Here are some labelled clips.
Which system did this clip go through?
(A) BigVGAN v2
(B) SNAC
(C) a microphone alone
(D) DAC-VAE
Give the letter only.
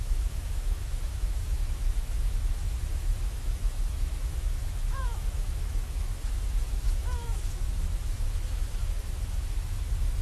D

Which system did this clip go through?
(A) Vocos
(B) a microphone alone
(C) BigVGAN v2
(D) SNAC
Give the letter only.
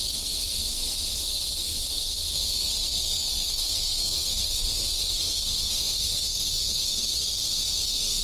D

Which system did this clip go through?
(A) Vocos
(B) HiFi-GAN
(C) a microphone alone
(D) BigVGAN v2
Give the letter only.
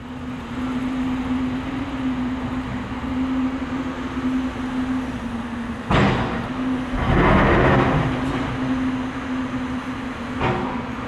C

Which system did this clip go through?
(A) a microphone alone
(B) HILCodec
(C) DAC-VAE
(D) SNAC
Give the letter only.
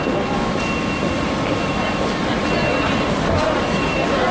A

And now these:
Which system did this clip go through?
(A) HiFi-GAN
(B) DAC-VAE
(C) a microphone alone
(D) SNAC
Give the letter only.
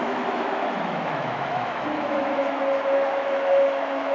B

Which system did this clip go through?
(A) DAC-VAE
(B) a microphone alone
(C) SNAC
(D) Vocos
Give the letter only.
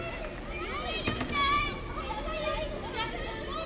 B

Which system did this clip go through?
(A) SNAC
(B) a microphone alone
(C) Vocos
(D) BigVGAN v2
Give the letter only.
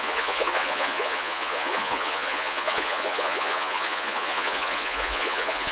C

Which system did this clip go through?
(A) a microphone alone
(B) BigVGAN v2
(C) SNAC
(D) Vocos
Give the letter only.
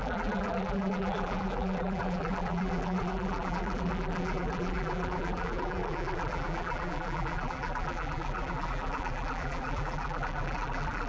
B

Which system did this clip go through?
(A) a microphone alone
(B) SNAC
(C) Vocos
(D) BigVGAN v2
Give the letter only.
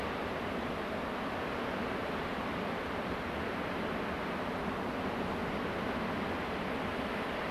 A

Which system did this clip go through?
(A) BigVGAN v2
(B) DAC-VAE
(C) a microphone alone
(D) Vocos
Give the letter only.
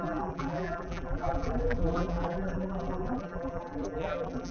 A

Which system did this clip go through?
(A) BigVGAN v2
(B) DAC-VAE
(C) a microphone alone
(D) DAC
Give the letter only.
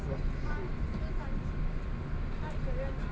C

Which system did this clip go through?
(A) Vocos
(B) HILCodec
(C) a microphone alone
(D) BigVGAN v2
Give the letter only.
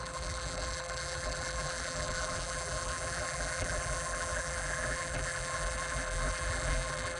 D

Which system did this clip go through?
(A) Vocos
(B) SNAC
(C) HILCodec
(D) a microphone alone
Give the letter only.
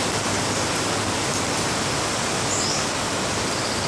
D